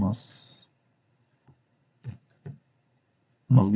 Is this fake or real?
fake